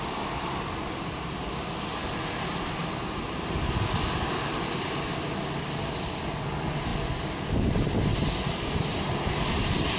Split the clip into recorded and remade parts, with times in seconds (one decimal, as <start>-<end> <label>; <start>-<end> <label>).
0.0-10.0 recorded

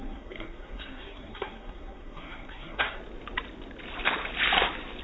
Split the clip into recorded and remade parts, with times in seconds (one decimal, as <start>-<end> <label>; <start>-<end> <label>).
0.0-3.0 remade; 3.0-5.0 recorded

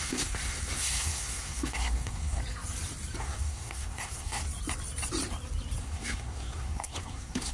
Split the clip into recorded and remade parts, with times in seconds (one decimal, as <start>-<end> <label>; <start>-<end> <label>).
0.0-2.4 remade; 2.4-3.2 recorded; 3.2-4.4 remade; 4.4-5.8 recorded; 5.8-7.5 remade

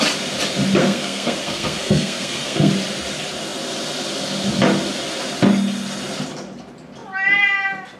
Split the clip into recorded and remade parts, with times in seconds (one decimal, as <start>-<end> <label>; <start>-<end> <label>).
0.0-0.8 recorded; 0.8-2.7 remade; 2.7-8.0 recorded

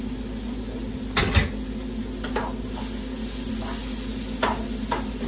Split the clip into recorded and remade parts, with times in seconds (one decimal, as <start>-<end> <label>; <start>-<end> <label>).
0.0-5.3 recorded

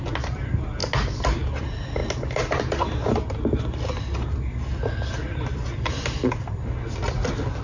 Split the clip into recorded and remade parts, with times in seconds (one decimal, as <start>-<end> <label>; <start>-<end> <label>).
0.0-7.6 recorded

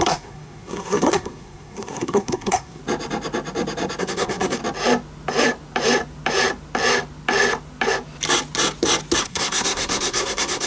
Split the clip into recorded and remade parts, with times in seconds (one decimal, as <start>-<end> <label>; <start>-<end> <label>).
0.0-2.8 remade; 2.8-4.0 recorded; 4.0-4.6 remade; 4.6-9.2 recorded; 9.2-10.7 remade

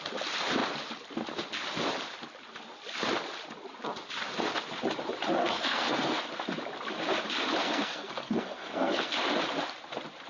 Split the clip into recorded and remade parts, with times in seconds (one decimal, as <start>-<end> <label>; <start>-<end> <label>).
0.0-5.4 recorded; 5.4-6.2 remade; 6.2-7.6 recorded; 7.6-9.1 remade; 9.1-10.3 recorded